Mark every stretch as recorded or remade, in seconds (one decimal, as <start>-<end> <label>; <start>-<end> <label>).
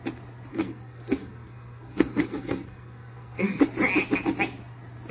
0.0-0.5 recorded; 0.5-3.6 remade; 3.6-5.1 recorded